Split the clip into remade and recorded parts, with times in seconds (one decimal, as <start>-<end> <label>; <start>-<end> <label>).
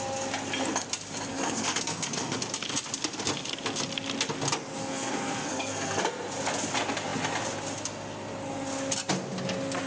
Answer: 0.0-1.3 recorded; 1.3-2.4 remade; 2.4-4.8 recorded; 4.8-6.0 remade; 6.0-9.9 recorded